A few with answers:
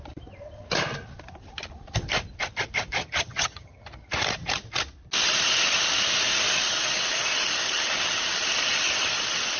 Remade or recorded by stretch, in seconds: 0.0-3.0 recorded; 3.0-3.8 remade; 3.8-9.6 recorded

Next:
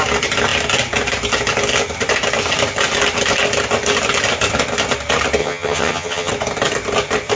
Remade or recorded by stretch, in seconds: 0.0-5.4 recorded; 5.4-6.3 remade; 6.3-7.4 recorded

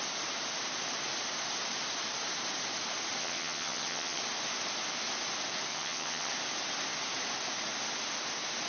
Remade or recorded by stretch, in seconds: 0.0-3.2 recorded; 3.2-4.2 remade; 4.2-5.7 recorded; 5.7-6.3 remade; 6.3-8.7 recorded

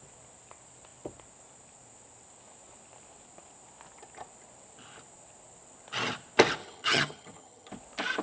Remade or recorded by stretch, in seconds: 0.0-6.6 recorded; 6.6-7.7 remade; 7.7-8.2 recorded

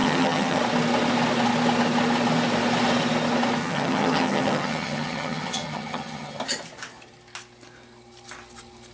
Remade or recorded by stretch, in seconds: 0.0-0.6 remade; 0.6-3.6 recorded; 3.6-6.4 remade; 6.4-8.9 recorded

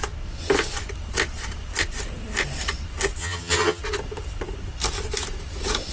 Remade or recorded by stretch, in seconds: 0.0-3.2 recorded; 3.2-3.8 remade; 3.8-5.9 recorded